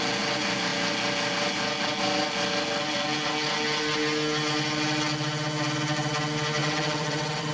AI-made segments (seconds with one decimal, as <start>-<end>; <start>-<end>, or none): 6.6-7.5